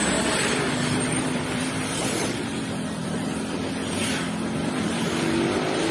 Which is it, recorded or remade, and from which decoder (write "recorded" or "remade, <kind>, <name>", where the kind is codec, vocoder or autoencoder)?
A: remade, vocoder, BigVGAN v2